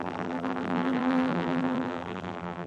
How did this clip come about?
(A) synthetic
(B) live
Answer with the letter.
A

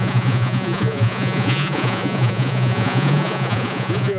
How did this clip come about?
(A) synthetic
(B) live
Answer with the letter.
A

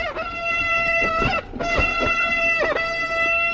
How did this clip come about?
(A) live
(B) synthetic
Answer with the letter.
A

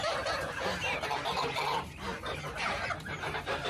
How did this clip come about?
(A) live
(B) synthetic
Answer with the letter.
B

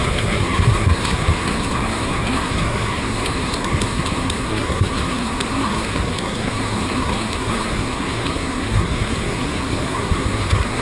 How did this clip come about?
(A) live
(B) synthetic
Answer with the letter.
B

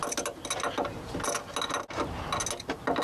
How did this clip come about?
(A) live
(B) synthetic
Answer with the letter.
A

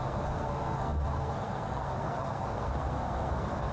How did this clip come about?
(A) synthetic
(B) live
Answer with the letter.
A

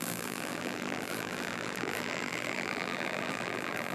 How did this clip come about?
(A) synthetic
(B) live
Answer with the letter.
A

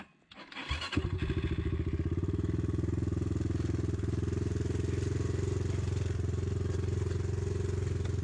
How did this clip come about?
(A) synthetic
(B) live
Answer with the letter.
B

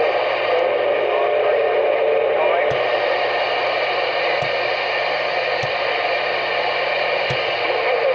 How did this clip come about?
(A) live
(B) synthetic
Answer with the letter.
A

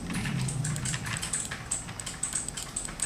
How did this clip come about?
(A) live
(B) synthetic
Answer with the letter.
A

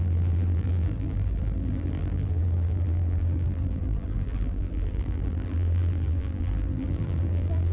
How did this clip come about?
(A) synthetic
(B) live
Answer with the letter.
A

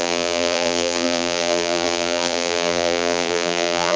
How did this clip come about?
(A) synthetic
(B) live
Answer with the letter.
A